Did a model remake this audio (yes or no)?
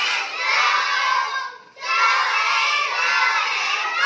no